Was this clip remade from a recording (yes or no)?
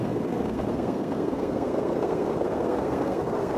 yes